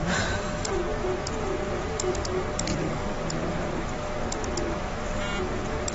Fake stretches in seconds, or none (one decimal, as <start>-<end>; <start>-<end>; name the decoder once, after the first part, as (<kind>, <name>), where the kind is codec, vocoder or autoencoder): 2.7-3.2 (codec, DAC)